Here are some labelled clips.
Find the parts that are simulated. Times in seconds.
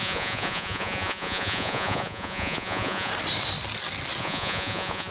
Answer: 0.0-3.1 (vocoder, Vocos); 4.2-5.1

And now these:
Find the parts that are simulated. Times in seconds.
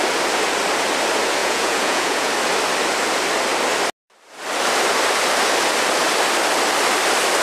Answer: 1.4-2.3 (vocoder, Vocos)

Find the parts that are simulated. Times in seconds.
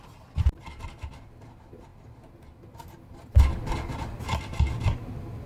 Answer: none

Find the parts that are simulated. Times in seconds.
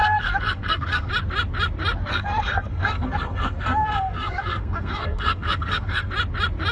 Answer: 0.0-1.1 (codec, SNAC); 2.1-6.1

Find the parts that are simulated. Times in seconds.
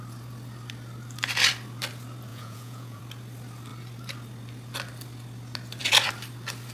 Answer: 2.3-3.0 (vocoder, Vocos)